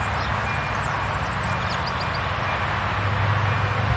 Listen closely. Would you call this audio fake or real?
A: real